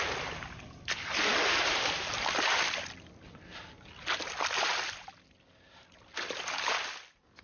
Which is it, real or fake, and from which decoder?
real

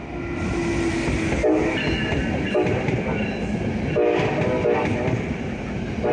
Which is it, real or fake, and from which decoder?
real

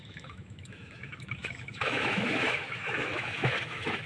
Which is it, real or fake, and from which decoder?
fake, autoencoder, DAC-VAE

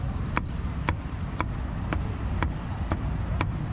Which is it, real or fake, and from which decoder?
fake, vocoder, BigVGAN v2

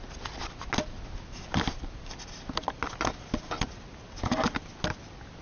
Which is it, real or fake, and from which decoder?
real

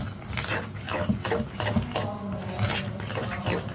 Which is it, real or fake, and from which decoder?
real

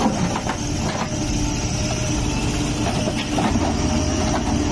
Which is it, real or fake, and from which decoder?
real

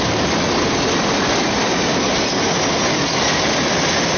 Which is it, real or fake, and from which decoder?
real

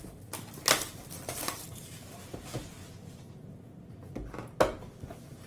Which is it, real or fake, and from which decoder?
real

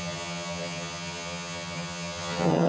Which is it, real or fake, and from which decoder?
fake, vocoder, HiFi-GAN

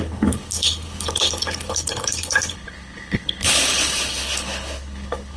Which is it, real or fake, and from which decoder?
fake, codec, HILCodec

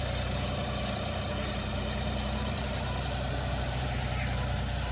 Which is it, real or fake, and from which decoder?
fake, vocoder, BigVGAN v2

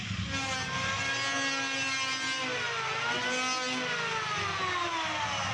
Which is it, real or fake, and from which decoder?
real